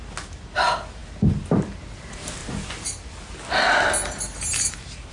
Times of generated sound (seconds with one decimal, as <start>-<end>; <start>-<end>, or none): none